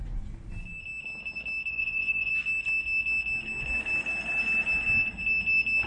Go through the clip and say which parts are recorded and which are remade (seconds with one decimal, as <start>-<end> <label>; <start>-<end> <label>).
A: 0.0-1.7 recorded; 1.7-2.3 remade; 2.3-5.9 recorded